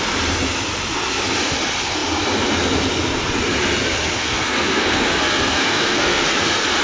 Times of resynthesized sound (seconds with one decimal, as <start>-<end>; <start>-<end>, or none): 4.2-6.2